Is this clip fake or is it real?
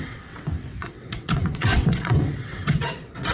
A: fake